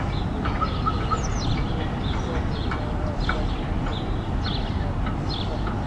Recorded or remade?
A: recorded